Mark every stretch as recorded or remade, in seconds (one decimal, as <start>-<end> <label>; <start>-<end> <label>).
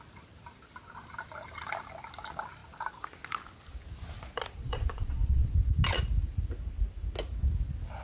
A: 0.0-4.6 recorded; 4.6-5.5 remade; 5.5-8.0 recorded